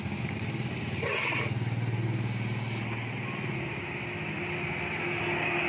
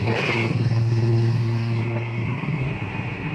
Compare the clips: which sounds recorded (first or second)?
first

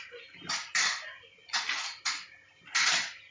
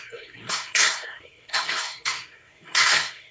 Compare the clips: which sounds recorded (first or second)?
first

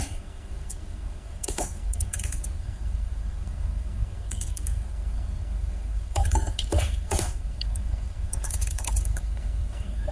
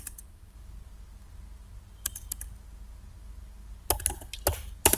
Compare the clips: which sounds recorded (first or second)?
second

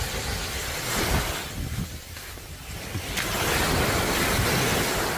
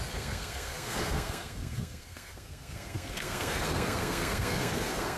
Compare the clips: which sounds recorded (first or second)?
first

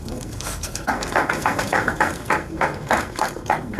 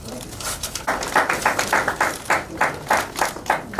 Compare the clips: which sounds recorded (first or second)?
second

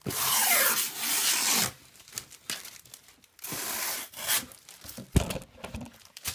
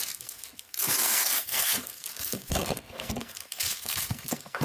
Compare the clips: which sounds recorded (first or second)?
first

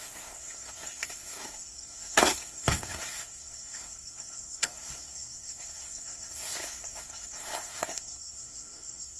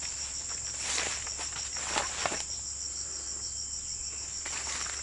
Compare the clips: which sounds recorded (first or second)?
second